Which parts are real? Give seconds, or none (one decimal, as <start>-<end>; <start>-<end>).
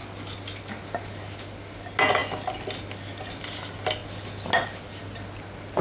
0.0-5.8